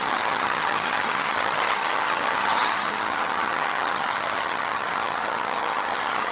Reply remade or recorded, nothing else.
remade